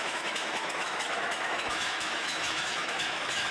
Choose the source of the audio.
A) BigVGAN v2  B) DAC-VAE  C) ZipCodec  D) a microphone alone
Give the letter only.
B